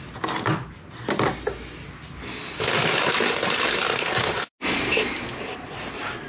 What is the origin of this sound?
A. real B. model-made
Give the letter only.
A